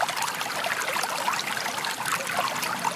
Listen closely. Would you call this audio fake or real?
real